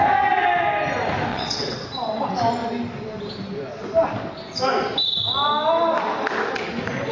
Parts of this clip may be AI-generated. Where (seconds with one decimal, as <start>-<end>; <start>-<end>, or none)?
1.3-2.2